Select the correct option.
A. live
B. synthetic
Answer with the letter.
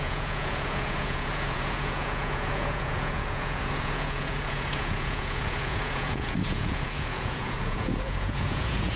B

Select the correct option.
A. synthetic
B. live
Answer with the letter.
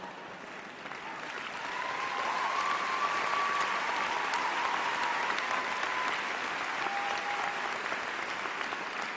B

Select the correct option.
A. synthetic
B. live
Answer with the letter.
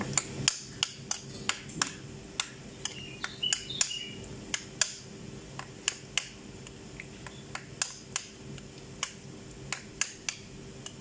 B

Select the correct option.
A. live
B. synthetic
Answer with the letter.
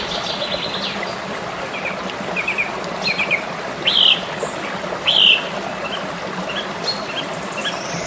A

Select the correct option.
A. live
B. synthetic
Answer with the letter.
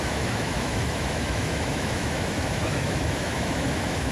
B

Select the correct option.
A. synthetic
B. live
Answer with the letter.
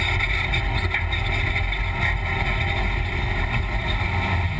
B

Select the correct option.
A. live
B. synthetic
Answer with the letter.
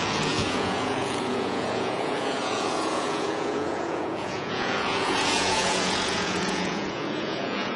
B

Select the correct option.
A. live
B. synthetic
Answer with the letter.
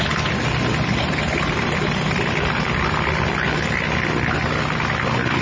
A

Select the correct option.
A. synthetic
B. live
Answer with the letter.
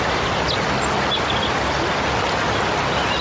B